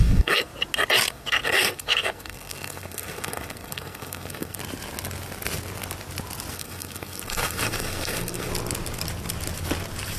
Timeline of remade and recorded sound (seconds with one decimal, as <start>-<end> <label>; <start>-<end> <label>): 0.0-0.5 remade; 0.5-1.1 recorded; 1.1-4.6 remade; 4.6-6.5 recorded; 6.5-8.5 remade; 8.5-10.2 recorded